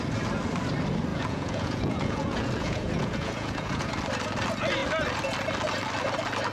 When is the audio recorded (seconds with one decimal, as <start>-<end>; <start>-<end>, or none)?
0.0-1.1; 3.9-6.5